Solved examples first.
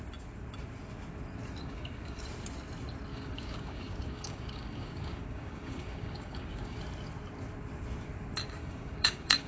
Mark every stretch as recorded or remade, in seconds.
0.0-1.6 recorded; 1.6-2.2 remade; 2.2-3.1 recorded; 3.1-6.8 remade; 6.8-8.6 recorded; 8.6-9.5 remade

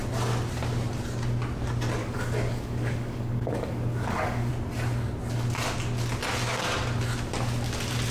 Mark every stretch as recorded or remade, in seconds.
0.0-2.0 recorded; 2.0-4.5 remade; 4.5-8.1 recorded

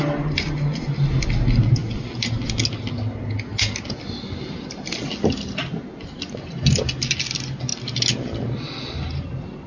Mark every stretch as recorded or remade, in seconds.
0.0-9.7 recorded

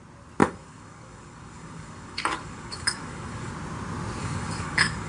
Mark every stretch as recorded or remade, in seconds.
0.0-0.4 recorded; 0.4-3.5 remade; 3.5-4.2 recorded; 4.2-5.1 remade